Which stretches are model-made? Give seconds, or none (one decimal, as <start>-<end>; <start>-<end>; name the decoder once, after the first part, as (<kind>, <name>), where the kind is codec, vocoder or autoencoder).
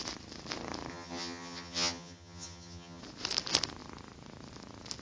0.9-3.0 (vocoder, HiFi-GAN)